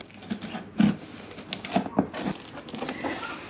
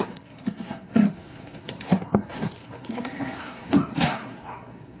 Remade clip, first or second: second